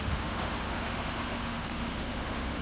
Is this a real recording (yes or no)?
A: no